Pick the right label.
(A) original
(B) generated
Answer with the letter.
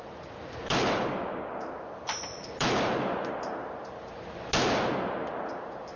A